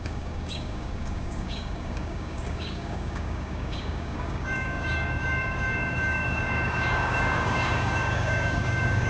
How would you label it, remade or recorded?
remade